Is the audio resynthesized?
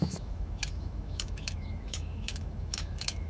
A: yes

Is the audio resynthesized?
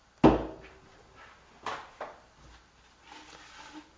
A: no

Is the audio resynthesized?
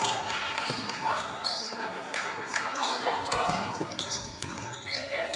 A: yes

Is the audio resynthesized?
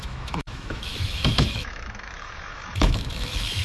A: yes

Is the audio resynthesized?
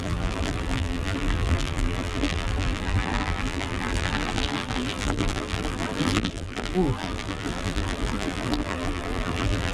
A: yes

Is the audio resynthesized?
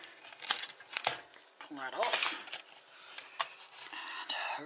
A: no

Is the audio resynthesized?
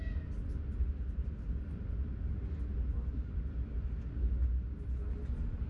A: no